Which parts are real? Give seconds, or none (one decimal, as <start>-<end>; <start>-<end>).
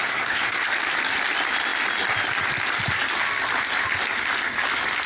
0.7-5.1